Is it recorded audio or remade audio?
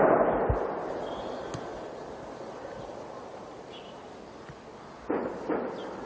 recorded